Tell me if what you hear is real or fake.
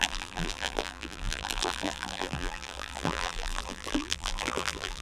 fake